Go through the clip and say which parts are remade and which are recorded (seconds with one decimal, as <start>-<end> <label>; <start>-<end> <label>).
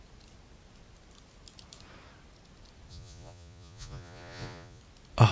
0.0-2.9 recorded; 2.9-4.8 remade; 4.8-5.3 recorded